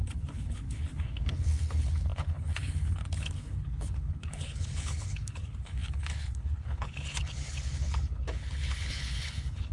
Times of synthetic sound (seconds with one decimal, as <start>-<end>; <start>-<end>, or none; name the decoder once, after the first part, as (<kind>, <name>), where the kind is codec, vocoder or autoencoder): 0.0-9.7 (codec, HILCodec)